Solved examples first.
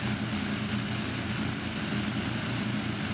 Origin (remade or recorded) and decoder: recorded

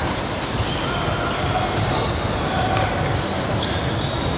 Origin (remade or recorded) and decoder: recorded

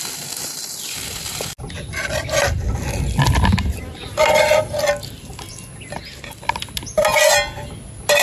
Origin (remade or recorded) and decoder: recorded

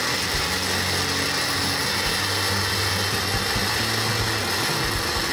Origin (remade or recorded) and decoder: recorded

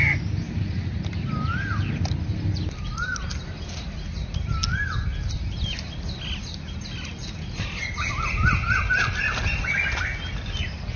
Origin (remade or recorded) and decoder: recorded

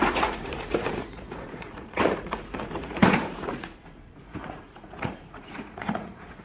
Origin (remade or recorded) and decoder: remade, vocoder, Vocos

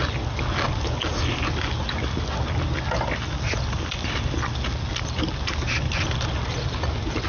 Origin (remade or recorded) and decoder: recorded